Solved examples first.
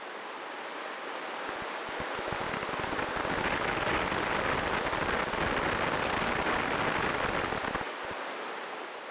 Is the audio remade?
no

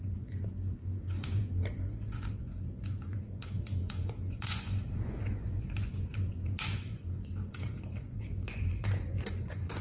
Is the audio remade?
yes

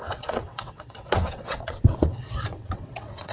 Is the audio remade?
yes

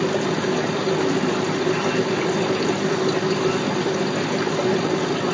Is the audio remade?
no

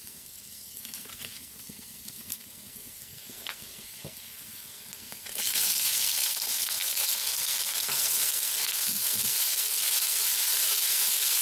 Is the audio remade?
yes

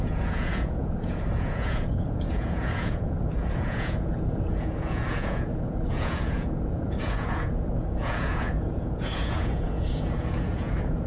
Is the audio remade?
yes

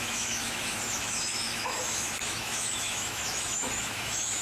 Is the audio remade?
yes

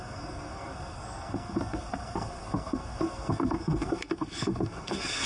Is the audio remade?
yes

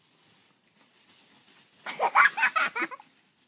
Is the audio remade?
no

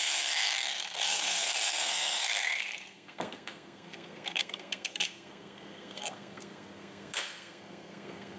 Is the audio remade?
yes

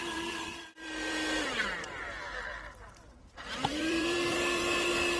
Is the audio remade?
yes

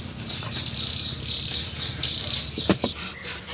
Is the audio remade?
no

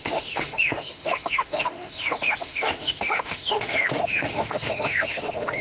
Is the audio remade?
yes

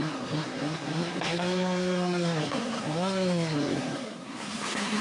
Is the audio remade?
yes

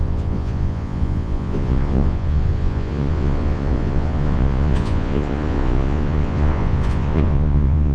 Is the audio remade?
yes